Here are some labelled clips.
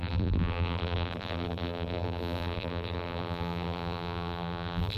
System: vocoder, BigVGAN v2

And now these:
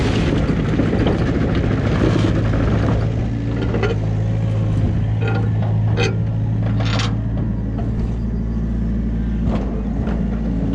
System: none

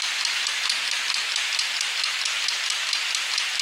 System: vocoder, BigVGAN v2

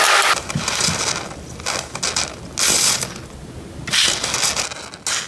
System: none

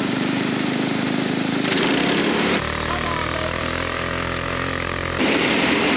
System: vocoder, BigVGAN v2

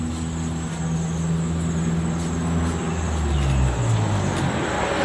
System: none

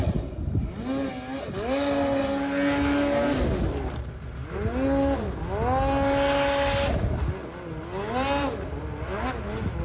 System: none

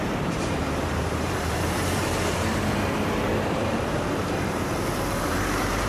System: vocoder, BigVGAN v2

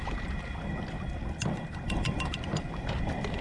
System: none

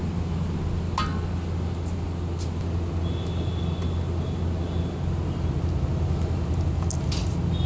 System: none